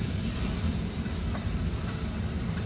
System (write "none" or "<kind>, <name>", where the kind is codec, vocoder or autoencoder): vocoder, BigVGAN v2